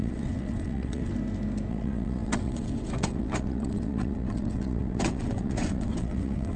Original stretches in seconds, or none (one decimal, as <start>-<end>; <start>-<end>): 1.1-1.7